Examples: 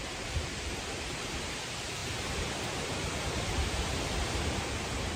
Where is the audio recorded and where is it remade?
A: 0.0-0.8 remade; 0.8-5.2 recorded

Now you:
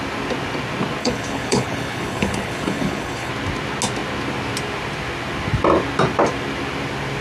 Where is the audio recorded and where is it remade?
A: 0.0-1.0 recorded; 1.0-3.3 remade; 3.3-7.2 recorded

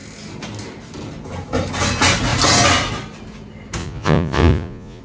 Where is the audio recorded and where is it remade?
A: 0.0-3.8 recorded; 3.8-5.0 remade